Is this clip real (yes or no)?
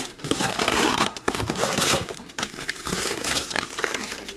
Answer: no